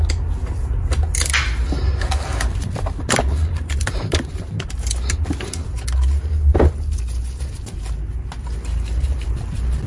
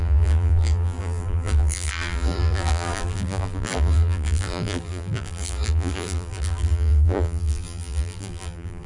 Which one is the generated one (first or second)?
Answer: second